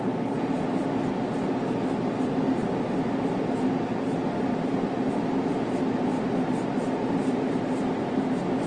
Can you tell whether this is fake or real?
real